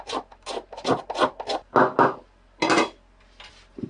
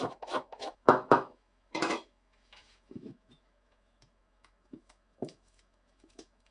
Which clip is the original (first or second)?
first